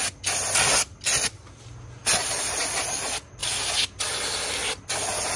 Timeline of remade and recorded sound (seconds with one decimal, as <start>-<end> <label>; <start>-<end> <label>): 0.0-5.4 recorded